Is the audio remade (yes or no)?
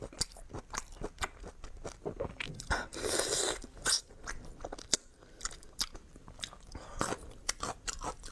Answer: no